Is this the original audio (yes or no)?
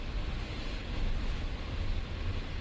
yes